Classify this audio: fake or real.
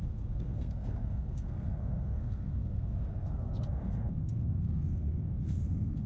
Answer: fake